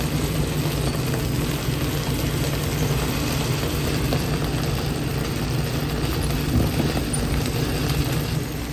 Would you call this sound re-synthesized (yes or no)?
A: no